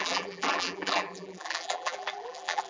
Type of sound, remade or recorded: remade